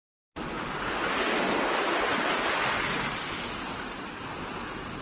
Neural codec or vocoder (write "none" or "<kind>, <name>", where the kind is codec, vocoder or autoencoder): none